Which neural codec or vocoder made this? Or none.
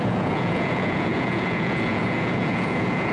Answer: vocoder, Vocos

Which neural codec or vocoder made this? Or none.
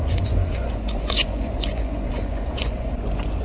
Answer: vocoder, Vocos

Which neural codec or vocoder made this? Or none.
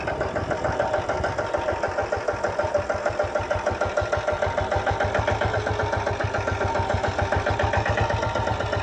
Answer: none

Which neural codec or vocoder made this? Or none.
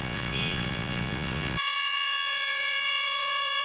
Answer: vocoder, Vocos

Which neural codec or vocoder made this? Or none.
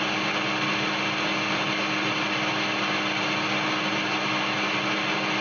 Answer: none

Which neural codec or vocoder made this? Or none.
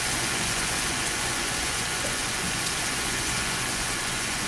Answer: vocoder, Vocos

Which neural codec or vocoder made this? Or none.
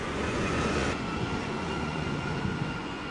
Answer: vocoder, Vocos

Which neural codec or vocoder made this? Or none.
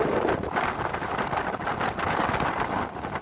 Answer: none